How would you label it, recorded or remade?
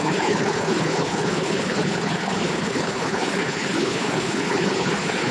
remade